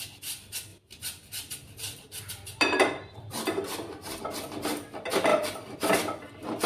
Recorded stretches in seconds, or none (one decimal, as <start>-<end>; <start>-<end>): 0.0-0.7; 4.2-5.3; 5.9-6.7